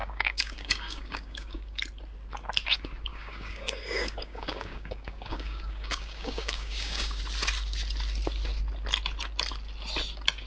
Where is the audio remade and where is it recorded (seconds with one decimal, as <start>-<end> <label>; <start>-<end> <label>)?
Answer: 0.0-1.8 remade; 1.8-3.1 recorded; 3.1-7.2 remade; 7.2-10.5 recorded